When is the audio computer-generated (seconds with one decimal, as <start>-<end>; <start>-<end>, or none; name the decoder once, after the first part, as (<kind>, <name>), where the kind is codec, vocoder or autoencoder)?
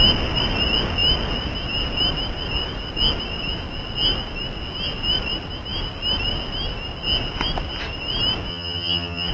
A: 8.5-9.3 (vocoder, HiFi-GAN)